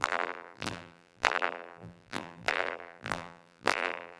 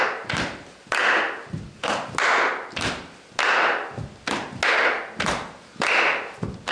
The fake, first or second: first